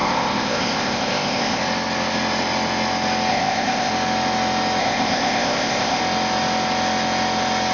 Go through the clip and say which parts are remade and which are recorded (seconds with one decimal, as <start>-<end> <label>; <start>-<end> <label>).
0.0-1.6 remade; 1.6-3.3 recorded; 3.3-3.9 remade; 3.9-4.8 recorded; 4.8-6.0 remade; 6.0-7.7 recorded